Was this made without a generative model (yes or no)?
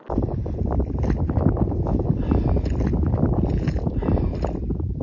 yes